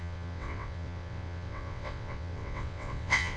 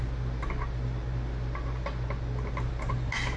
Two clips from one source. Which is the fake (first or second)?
first